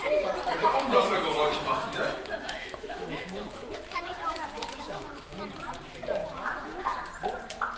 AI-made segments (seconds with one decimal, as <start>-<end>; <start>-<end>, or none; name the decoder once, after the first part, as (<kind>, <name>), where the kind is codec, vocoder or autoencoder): 0.7-5.4 (autoencoder, DAC-VAE); 6.2-7.0